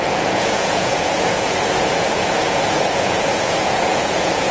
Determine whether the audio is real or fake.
fake